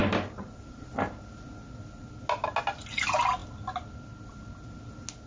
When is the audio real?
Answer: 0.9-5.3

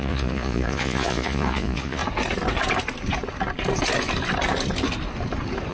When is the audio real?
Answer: 2.0-5.7

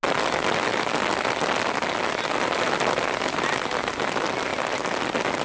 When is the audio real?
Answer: 0.0-5.4